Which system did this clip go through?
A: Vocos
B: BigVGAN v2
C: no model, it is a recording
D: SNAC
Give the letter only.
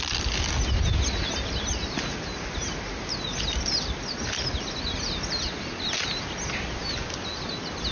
C